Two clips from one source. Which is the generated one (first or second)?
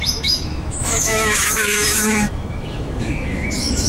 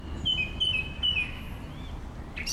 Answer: first